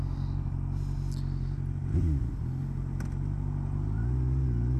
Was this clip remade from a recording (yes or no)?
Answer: no